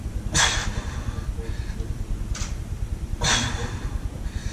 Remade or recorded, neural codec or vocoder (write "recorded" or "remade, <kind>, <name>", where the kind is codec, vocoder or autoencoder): remade, vocoder, BigVGAN v2